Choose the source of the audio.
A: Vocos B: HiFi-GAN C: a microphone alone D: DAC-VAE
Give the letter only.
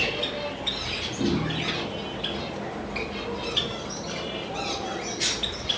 C